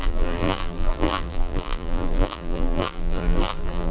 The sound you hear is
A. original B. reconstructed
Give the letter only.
B